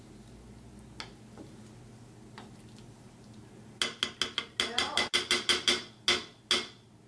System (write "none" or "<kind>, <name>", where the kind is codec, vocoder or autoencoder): none